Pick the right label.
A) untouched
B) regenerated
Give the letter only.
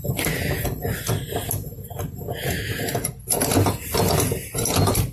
A